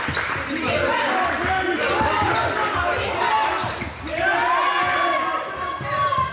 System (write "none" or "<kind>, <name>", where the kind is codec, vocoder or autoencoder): none